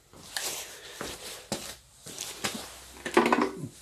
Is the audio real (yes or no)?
yes